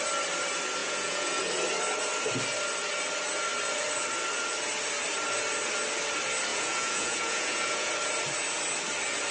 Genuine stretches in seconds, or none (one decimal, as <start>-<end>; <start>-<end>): 0.0-0.8; 1.4-6.5; 7.9-9.3